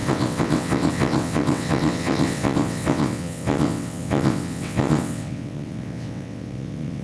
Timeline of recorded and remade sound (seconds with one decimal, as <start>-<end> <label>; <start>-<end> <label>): 0.0-7.0 remade